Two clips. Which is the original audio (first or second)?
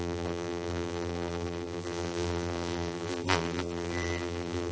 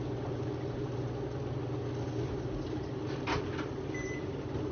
second